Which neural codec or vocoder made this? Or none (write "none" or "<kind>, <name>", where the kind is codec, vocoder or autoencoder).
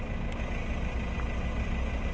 none